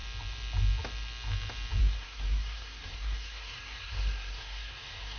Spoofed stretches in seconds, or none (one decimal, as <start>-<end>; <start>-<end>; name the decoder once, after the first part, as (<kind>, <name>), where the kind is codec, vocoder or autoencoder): 1.8-5.2 (codec, SNAC)